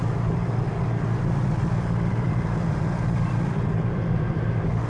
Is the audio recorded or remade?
recorded